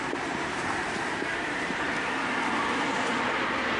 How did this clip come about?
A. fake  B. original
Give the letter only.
A